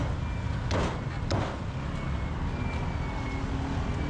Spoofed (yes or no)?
no